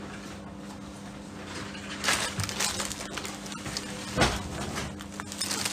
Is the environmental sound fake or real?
real